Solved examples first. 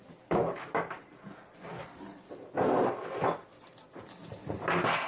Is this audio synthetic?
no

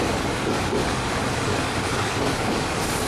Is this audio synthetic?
yes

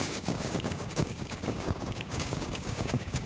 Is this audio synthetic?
yes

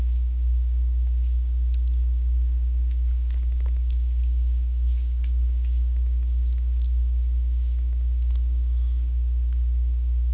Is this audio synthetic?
yes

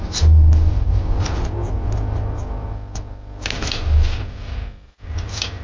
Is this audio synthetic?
no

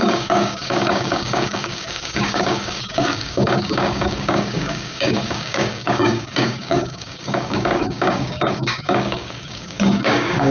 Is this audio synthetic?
yes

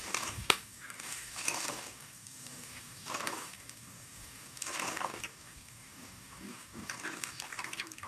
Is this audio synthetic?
yes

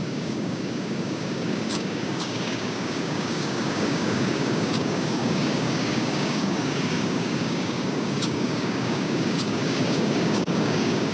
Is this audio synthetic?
yes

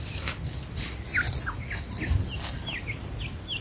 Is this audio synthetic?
no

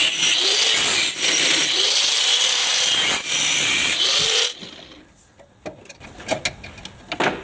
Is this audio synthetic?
no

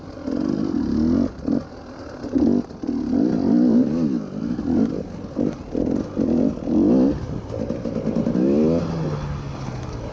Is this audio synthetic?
no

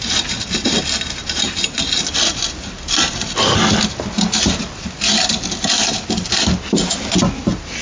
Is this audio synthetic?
no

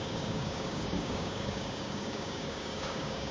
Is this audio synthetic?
yes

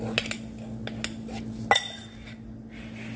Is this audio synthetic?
no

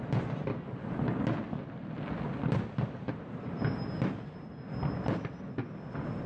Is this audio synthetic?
no